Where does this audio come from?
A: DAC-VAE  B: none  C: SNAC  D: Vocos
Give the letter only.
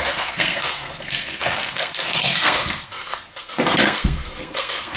C